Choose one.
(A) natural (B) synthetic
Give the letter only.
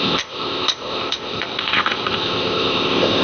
B